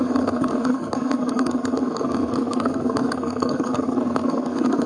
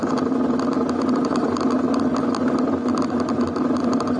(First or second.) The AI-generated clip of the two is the first